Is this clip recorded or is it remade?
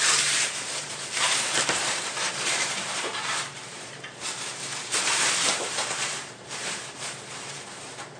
remade